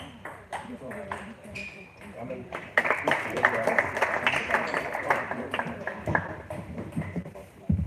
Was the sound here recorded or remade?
remade